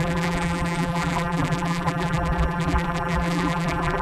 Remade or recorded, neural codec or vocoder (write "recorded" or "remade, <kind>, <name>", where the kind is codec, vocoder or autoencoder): remade, vocoder, BigVGAN v2